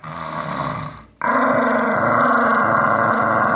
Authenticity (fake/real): real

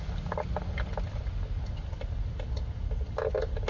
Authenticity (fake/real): real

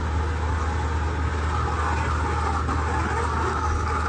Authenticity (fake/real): real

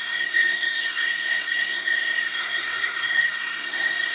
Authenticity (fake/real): fake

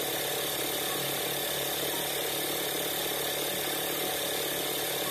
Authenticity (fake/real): real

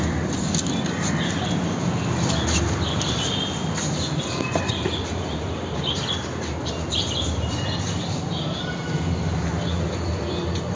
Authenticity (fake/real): real